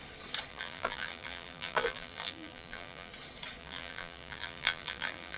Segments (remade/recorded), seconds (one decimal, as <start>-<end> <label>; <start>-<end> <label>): 0.0-0.5 recorded; 0.5-3.1 remade; 3.1-3.6 recorded; 3.6-5.4 remade